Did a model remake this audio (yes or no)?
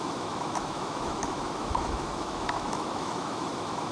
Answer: yes